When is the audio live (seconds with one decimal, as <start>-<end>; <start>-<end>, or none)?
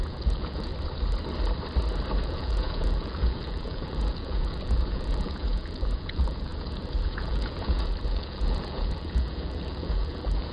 0.7-2.2